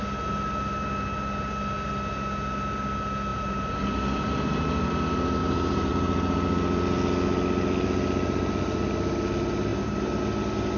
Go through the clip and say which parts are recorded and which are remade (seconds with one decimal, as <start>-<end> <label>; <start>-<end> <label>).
0.0-3.3 recorded; 3.3-4.9 remade; 4.9-5.4 recorded; 5.4-5.9 remade; 5.9-9.7 recorded; 9.7-10.2 remade; 10.2-10.8 recorded

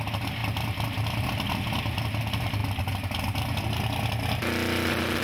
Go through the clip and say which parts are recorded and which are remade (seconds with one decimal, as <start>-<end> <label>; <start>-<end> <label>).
0.0-5.2 recorded

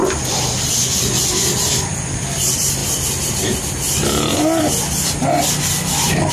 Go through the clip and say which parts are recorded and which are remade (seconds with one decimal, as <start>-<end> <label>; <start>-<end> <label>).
0.0-0.7 recorded; 0.7-2.8 remade; 2.8-6.3 recorded

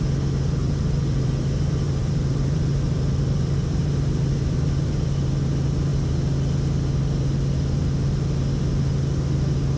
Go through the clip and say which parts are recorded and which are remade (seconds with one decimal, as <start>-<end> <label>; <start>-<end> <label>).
0.0-0.6 recorded; 0.6-5.2 remade; 5.2-9.8 recorded

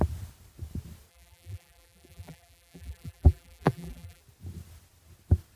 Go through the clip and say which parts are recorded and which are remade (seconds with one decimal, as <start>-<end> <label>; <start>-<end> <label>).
0.0-1.1 recorded; 1.1-4.2 remade; 4.2-5.6 recorded